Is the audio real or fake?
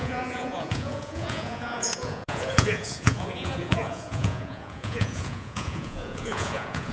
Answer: fake